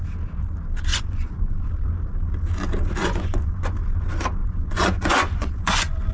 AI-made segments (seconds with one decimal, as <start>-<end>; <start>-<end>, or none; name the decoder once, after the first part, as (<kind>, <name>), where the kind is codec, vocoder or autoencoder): 0.9-1.7 (vocoder, Vocos); 3.0-3.8; 4.4-6.1